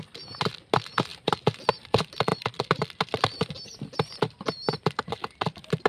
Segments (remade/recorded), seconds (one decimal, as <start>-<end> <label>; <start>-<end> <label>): 0.0-1.1 recorded; 1.1-1.7 remade; 1.7-2.3 recorded; 2.3-5.9 remade